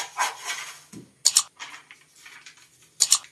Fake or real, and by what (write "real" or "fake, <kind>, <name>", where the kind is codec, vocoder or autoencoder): real